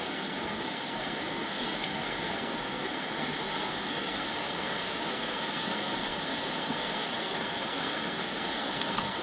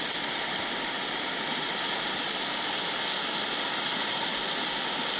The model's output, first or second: first